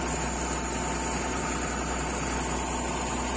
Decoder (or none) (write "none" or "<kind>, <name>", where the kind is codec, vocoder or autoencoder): none